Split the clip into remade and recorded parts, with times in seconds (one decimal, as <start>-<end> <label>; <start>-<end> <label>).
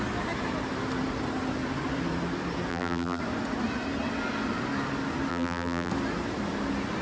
0.0-2.7 recorded; 2.7-3.2 remade; 3.2-5.3 recorded; 5.3-5.9 remade; 5.9-7.0 recorded